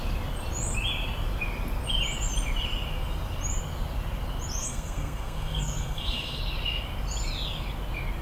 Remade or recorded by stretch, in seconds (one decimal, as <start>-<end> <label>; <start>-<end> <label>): 0.0-4.6 recorded; 4.6-6.4 remade; 6.4-8.2 recorded